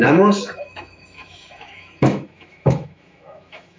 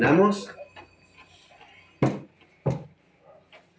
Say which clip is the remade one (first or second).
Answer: first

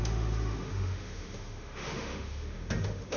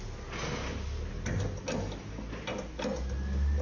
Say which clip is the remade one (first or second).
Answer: first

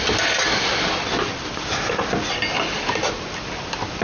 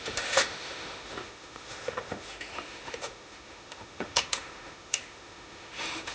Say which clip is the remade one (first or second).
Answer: second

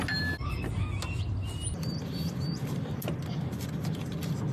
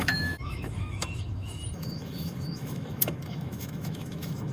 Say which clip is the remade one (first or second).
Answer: second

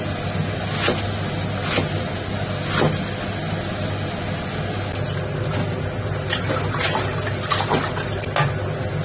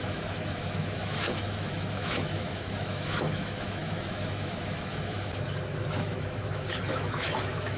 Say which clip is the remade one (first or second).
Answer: second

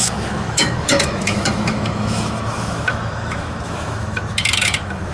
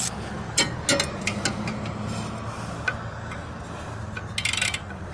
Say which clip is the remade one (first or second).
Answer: first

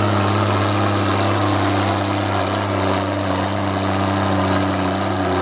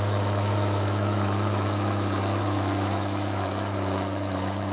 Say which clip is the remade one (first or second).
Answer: second